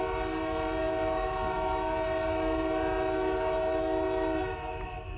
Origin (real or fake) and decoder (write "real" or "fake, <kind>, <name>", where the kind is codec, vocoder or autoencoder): real